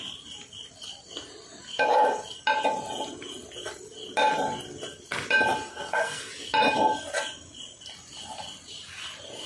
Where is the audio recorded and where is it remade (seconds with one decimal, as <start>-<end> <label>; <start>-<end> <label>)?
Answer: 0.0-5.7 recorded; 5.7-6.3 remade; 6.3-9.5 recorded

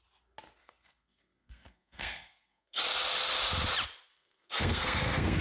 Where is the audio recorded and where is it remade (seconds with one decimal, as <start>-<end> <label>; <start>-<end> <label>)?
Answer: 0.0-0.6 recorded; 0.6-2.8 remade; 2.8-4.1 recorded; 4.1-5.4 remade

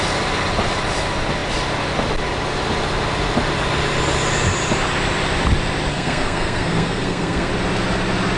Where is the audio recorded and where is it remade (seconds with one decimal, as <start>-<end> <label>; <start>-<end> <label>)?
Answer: 0.0-5.9 recorded; 5.9-7.5 remade; 7.5-8.4 recorded